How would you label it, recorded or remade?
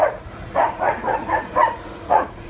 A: remade